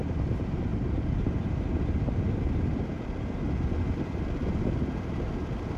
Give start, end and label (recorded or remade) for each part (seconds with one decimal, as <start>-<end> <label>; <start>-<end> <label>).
0.0-0.7 recorded; 0.7-3.4 remade; 3.4-5.8 recorded